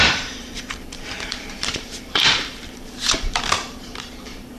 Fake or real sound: fake